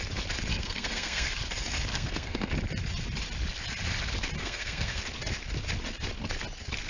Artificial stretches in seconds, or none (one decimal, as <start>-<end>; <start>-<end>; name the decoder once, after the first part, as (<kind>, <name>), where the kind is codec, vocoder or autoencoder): 0.5-1.3 (codec, SNAC); 1.9-2.5; 4.4-5.0

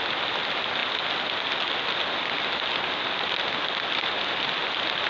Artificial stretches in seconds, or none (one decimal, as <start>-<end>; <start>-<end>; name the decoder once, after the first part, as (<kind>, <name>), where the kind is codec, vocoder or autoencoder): none

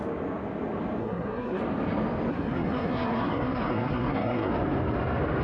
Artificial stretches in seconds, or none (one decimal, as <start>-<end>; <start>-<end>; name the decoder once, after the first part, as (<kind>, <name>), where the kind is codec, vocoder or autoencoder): 1.0-1.6 (codec, SNAC); 2.3-4.5

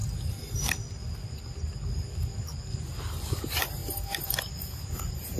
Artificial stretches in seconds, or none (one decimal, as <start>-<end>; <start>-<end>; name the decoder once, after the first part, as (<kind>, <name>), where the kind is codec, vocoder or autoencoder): none

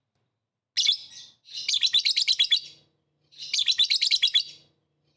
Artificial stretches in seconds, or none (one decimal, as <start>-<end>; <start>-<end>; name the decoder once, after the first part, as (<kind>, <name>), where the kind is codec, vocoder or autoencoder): none

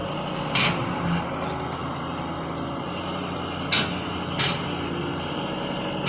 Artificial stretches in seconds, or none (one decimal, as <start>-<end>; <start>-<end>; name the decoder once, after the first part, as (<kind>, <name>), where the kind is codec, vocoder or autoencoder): none